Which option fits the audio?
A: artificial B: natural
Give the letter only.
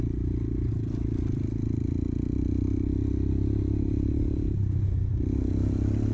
B